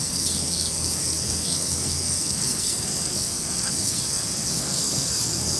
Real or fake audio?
fake